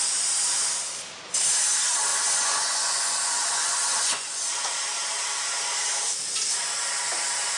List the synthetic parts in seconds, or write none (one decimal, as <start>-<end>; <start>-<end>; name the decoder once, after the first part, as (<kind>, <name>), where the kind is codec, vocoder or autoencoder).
2.1-4.5 (vocoder, Vocos)